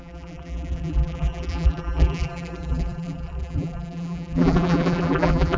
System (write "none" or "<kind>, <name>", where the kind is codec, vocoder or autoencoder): vocoder, BigVGAN v2